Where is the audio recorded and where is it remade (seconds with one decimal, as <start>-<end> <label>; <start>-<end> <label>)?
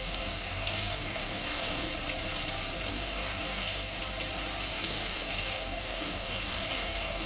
0.0-1.9 remade; 1.9-2.9 recorded; 2.9-4.0 remade; 4.0-4.7 recorded; 4.7-7.3 remade